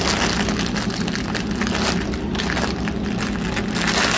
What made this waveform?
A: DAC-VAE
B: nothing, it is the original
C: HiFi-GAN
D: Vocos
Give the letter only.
B